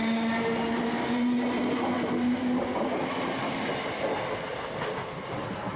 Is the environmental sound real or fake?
real